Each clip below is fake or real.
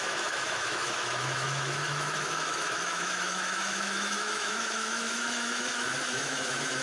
fake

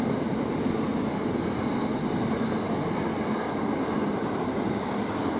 real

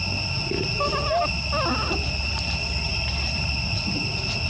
real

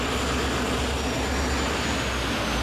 real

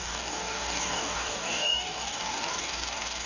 fake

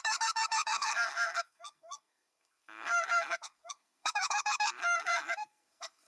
fake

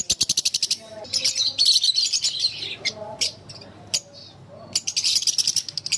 real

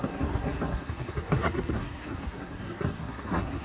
fake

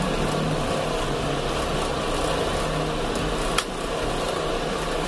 real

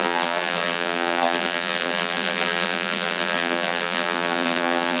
fake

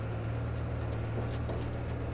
real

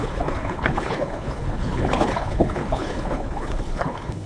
fake